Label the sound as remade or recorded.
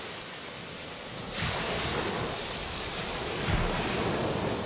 recorded